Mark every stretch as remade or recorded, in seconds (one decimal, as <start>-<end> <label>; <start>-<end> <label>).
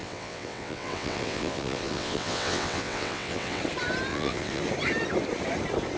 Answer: 0.0-3.6 remade; 3.6-4.1 recorded; 4.1-4.6 remade; 4.6-6.0 recorded